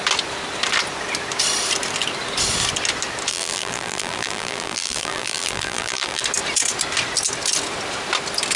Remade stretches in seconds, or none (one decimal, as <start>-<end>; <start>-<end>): 3.3-6.2